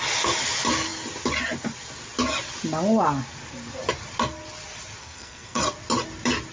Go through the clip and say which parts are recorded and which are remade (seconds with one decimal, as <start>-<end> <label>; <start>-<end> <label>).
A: 0.0-5.0 recorded; 5.0-5.6 remade; 5.6-6.5 recorded